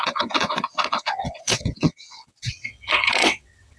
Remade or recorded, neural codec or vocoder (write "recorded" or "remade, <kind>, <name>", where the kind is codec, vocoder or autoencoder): remade, vocoder, WaveNeXt